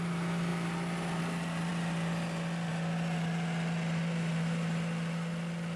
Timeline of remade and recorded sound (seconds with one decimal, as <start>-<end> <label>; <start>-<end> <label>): 0.0-5.8 recorded